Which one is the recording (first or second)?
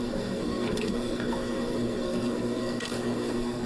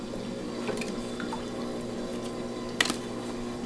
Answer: second